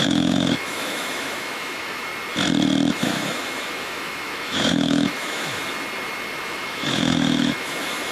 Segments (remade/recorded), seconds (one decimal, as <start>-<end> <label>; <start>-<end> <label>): 0.0-2.1 remade; 2.1-2.9 recorded; 2.9-5.6 remade; 5.6-6.4 recorded; 6.4-8.1 remade